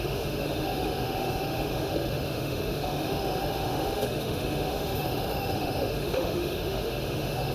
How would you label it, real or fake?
fake